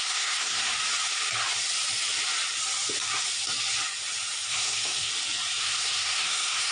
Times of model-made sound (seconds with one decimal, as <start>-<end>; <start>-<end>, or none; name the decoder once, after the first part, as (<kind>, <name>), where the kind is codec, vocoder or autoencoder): 0.0-0.6 (codec, SNAC); 4.5-5.1; 5.6-6.7